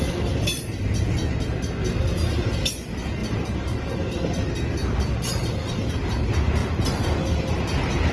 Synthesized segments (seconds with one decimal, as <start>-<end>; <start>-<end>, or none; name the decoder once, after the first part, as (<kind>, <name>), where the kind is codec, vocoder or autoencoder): 3.2-5.9 (vocoder, BigVGAN v2)

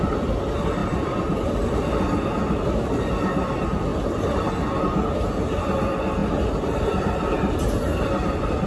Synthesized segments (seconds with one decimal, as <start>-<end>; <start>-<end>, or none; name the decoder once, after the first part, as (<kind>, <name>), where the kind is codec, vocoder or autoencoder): 0.8-2.0 (vocoder, BigVGAN v2); 3.9-4.4

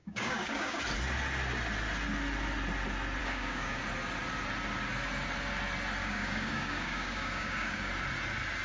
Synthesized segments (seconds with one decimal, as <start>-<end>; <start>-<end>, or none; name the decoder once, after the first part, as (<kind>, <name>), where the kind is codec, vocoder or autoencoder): 0.0-0.8 (codec, DAC); 3.2-3.8; 6.0-7.9

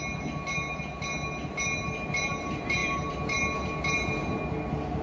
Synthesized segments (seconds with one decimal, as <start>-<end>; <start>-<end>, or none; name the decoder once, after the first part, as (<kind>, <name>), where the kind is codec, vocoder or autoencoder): none

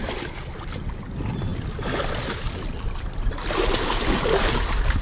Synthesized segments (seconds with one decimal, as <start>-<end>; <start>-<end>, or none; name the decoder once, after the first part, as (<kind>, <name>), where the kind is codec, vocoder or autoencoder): none

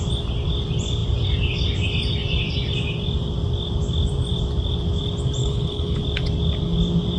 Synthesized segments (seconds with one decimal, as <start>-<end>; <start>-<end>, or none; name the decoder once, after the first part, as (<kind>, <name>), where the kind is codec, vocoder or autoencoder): 5.4-6.0 (codec, HILCodec)

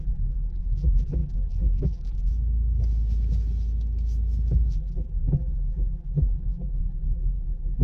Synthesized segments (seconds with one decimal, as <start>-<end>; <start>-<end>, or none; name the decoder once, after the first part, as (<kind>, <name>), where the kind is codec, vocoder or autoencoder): 0.0-2.3 (vocoder, BigVGAN v2); 4.7-7.8

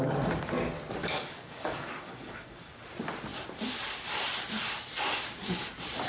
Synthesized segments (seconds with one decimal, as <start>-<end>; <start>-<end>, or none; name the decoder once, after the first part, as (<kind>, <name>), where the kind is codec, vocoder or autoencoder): 1.0-2.8 (codec, DAC)